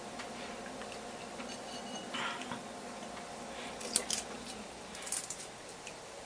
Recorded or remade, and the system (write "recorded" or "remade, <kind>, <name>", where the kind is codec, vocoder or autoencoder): remade, vocoder, BigVGAN v2